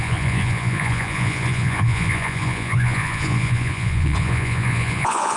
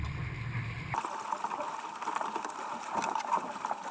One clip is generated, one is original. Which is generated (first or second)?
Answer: first